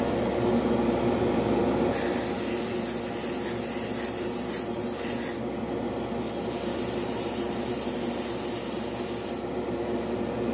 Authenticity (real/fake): real